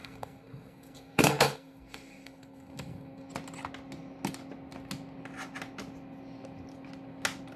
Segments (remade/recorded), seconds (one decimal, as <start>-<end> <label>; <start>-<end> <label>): 0.0-3.3 remade; 3.3-7.6 recorded